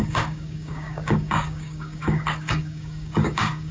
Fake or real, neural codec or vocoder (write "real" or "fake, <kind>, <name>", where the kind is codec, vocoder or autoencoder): fake, codec, DAC